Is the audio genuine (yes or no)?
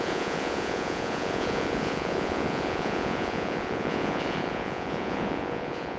no